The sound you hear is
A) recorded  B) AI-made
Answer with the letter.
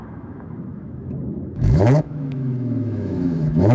B